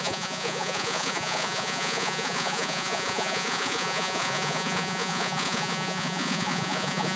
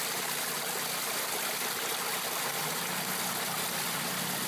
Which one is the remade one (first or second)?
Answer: first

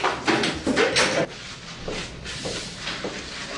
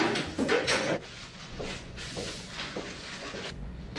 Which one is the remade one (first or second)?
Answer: second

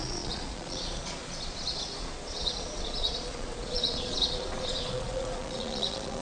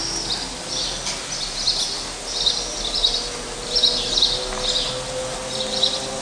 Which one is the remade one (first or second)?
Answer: first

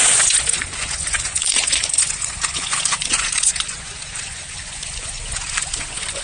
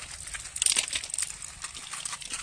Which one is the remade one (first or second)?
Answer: first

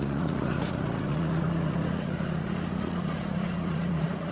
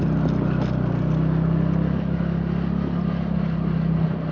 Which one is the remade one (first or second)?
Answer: first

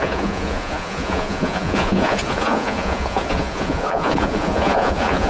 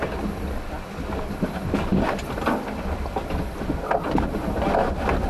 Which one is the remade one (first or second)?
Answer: first